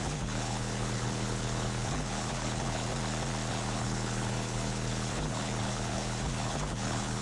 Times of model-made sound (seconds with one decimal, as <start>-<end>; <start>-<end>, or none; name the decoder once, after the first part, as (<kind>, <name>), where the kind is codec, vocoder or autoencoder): 0.0-2.9 (codec, HILCodec); 3.5-7.2